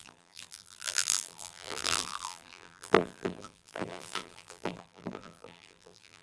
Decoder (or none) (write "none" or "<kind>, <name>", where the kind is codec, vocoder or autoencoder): vocoder, BigVGAN v2